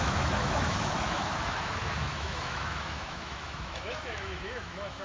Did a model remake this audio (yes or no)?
yes